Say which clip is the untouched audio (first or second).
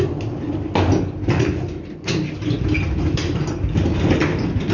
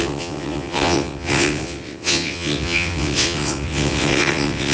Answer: first